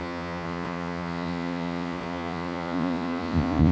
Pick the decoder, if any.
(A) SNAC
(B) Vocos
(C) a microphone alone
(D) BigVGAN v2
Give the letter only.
B